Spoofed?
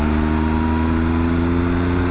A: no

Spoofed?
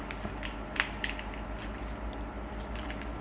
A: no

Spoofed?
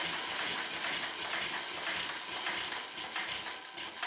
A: no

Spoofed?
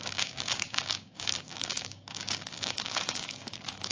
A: yes